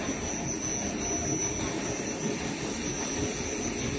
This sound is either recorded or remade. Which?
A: recorded